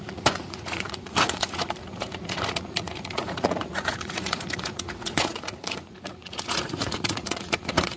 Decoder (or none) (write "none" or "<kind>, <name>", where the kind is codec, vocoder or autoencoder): vocoder, Vocos